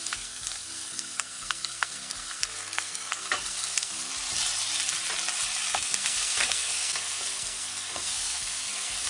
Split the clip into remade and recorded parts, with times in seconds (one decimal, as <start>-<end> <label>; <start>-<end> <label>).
0.0-4.1 remade; 4.1-5.7 recorded; 5.7-9.1 remade

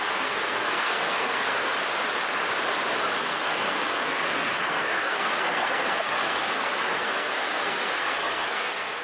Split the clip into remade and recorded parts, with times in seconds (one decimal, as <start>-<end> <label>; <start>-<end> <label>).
0.0-1.7 remade; 1.7-3.2 recorded; 3.2-9.0 remade

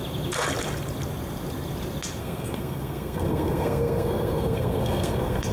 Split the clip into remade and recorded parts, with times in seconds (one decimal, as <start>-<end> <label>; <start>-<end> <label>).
0.0-2.2 recorded; 2.2-5.5 remade

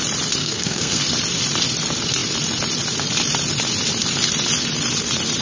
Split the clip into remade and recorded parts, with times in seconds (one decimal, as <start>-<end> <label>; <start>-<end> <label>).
0.0-0.4 recorded; 0.4-1.0 remade; 1.0-5.4 recorded

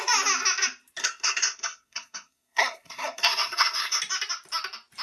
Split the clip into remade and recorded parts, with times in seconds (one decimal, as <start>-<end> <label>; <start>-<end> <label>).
0.0-1.0 recorded; 1.0-4.0 remade; 4.0-5.0 recorded

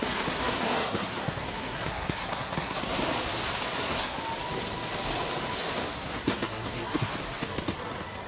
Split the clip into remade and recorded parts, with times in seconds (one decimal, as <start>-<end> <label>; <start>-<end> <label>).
0.0-3.0 remade; 3.0-3.8 recorded; 3.8-4.2 remade; 4.2-5.9 recorded; 5.9-7.1 remade; 7.1-8.3 recorded